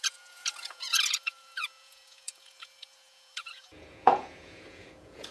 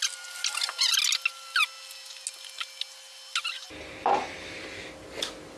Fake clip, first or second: first